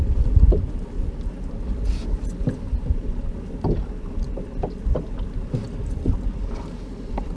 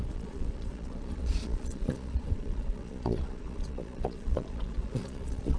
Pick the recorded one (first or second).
first